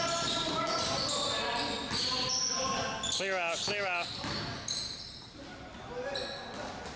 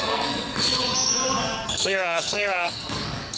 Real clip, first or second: first